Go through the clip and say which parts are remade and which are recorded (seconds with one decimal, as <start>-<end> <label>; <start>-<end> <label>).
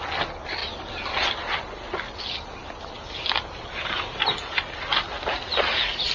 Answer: 0.0-5.3 recorded; 5.3-6.1 remade